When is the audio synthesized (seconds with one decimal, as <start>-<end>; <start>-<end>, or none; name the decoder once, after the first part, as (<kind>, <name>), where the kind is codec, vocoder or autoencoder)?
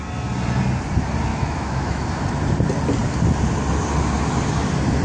1.3-2.1 (autoencoder, DAC-VAE)